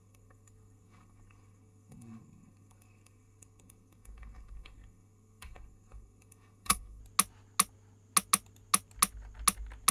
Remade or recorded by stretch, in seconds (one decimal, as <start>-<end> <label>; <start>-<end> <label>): 0.0-7.0 remade; 7.0-9.9 recorded